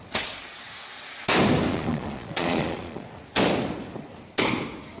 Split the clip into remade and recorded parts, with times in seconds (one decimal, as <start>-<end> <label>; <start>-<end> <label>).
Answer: 0.0-1.7 recorded; 1.7-3.2 remade; 3.2-5.0 recorded